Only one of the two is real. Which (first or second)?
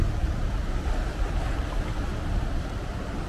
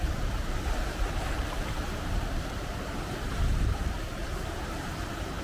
first